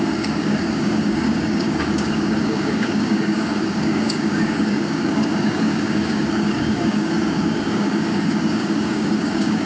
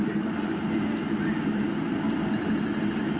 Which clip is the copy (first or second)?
first